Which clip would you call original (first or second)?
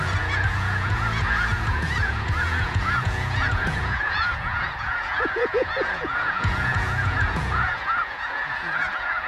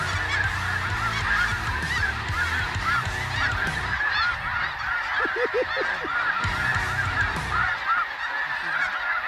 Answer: second